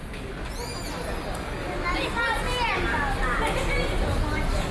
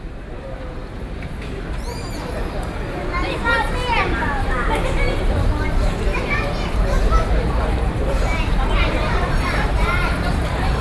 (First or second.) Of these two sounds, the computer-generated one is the second